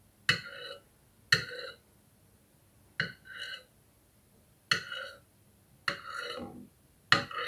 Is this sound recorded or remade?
recorded